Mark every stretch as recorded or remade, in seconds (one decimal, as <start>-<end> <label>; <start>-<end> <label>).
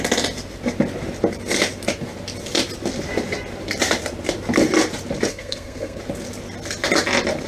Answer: 0.0-5.3 recorded; 5.3-6.0 remade; 6.0-7.5 recorded